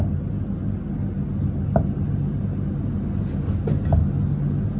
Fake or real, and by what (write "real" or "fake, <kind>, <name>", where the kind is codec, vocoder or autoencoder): real